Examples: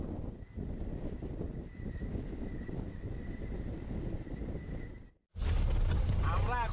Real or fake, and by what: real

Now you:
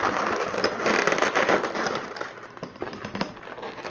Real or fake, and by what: real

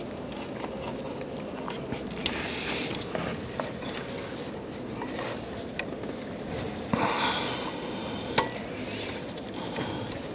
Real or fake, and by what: real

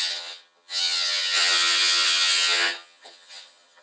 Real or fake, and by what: fake, vocoder, HiFi-GAN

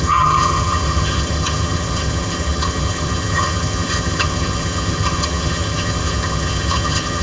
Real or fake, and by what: fake, vocoder, HiFi-GAN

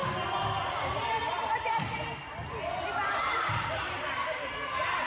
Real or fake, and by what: real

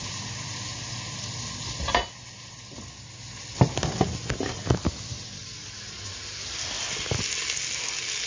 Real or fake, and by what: real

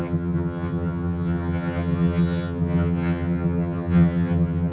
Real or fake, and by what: fake, vocoder, HiFi-GAN